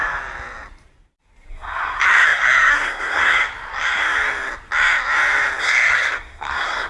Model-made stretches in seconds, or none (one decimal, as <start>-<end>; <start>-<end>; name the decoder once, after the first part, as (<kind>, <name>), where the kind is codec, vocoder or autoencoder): 1.5-3.4 (codec, SNAC); 5.6-6.9